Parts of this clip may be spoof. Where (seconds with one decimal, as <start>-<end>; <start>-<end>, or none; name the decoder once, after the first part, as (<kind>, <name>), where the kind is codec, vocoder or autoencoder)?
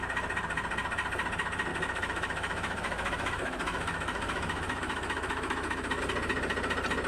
1.7-6.0 (autoencoder, DAC-VAE)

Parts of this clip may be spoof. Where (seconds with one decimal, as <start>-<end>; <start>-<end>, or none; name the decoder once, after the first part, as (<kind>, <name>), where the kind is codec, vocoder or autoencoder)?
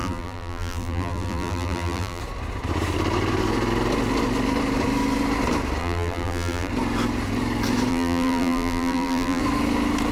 0.0-2.2 (vocoder, BigVGAN v2); 5.8-6.7; 7.9-9.4